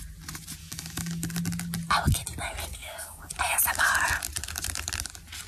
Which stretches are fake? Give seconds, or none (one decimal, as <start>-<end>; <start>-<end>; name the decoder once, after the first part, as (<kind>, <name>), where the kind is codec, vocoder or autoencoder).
0.6-1.4 (codec, DAC); 2.7-3.3